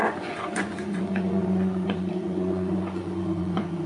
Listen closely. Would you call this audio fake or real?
fake